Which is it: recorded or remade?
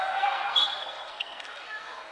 remade